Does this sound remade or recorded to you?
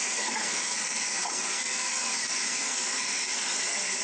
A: remade